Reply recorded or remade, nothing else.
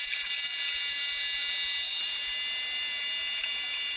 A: recorded